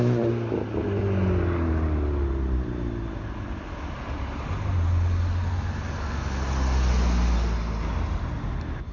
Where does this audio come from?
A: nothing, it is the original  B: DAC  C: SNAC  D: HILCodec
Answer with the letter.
A